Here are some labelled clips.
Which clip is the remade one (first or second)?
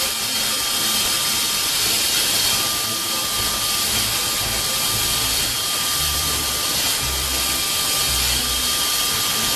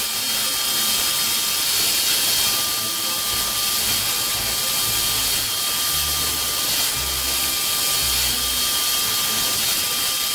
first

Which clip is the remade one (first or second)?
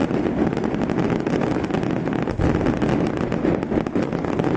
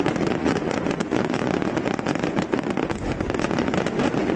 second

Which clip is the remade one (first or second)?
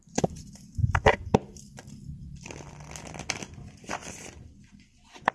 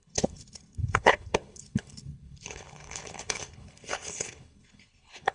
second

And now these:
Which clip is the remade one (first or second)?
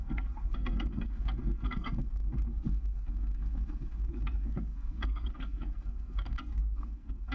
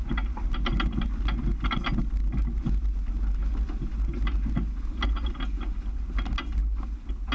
first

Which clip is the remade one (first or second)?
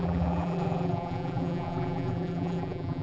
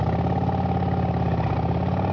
first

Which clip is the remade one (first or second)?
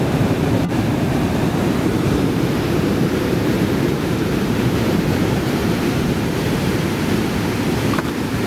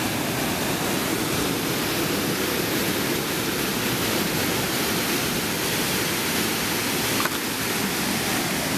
first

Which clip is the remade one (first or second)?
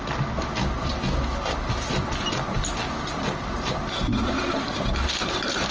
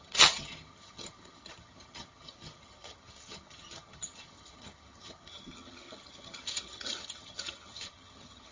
second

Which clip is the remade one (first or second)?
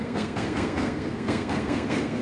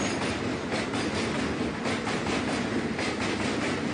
first